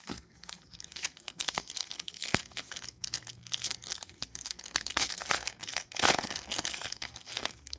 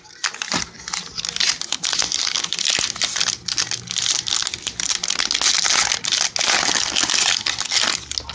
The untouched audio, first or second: second